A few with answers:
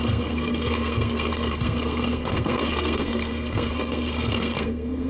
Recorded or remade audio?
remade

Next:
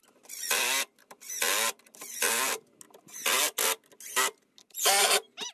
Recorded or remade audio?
recorded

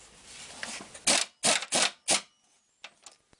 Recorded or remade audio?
recorded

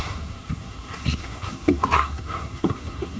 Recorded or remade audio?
remade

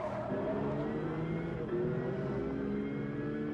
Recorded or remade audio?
recorded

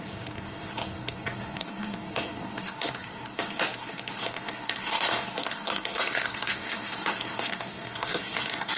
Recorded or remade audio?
remade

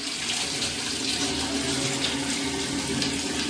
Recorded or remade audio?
recorded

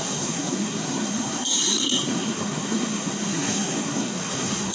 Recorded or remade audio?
remade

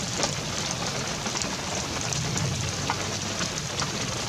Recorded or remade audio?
recorded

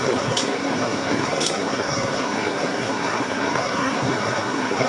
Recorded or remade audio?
remade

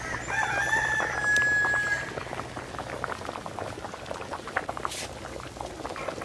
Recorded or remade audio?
recorded